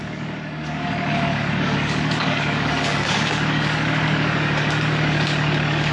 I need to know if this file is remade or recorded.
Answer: remade